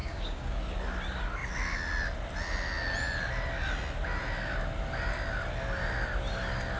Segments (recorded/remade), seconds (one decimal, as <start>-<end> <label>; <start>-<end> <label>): 0.0-0.6 remade; 0.6-6.8 recorded